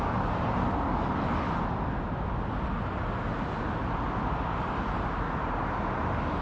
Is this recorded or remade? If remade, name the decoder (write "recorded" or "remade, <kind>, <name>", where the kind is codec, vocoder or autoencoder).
recorded